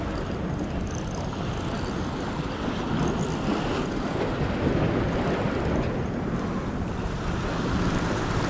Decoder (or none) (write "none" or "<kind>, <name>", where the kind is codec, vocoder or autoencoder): none